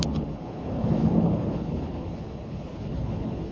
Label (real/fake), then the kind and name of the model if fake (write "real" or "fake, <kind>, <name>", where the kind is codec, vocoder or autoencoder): fake, codec, HILCodec